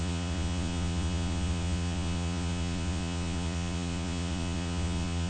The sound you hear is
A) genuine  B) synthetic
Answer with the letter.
B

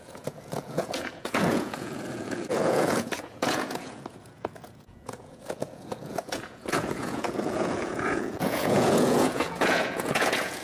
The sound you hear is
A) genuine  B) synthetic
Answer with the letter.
B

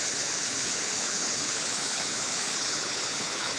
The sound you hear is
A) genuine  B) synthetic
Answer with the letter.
B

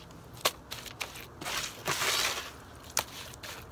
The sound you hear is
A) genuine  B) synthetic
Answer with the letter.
A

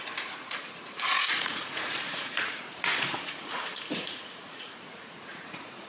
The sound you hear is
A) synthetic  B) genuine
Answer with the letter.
A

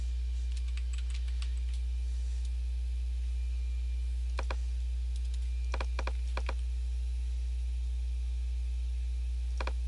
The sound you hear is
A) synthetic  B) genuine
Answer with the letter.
B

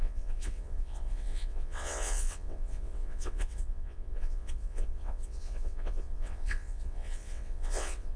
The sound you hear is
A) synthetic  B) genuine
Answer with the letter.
A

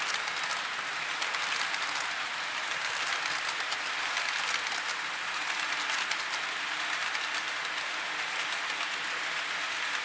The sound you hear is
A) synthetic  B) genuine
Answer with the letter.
B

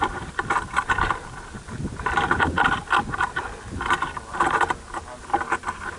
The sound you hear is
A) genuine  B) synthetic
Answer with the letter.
A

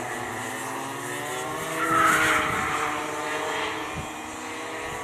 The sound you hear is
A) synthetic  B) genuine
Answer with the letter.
B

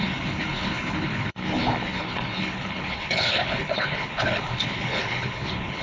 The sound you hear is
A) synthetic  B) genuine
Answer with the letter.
A